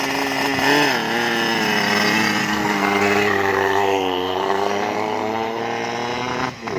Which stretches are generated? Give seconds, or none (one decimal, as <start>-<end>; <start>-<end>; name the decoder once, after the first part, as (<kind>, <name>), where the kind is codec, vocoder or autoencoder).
2.4-5.6 (codec, SNAC)

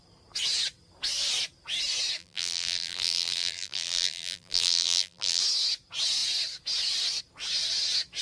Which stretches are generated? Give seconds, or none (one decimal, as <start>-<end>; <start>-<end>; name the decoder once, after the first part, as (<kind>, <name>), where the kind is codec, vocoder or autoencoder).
2.2-5.4 (vocoder, BigVGAN v2)

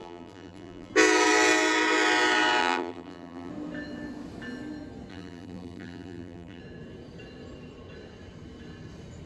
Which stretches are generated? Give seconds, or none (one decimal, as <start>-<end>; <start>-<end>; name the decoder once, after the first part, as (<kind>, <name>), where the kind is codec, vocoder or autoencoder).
0.0-0.9 (vocoder, BigVGAN v2); 2.6-3.5; 5.1-6.6

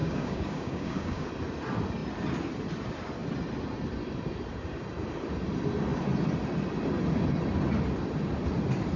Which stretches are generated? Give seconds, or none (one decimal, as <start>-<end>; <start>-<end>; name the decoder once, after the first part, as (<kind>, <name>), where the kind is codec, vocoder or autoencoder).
0.0-1.3 (codec, DAC)

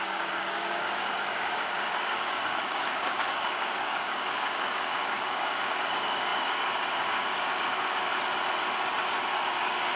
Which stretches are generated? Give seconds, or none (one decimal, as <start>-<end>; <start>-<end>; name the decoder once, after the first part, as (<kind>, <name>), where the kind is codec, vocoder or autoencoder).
0.0-8.1 (codec, DAC); 9.3-10.0

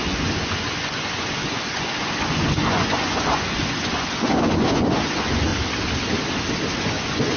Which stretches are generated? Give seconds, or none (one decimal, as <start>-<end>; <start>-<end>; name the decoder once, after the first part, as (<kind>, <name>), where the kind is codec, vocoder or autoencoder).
0.0-5.5 (vocoder, Vocos); 6.8-7.4

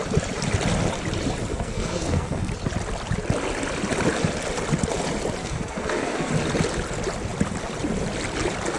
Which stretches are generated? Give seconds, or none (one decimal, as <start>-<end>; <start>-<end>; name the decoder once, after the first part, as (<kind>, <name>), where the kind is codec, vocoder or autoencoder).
1.5-2.5 (codec, SNAC); 5.4-6.3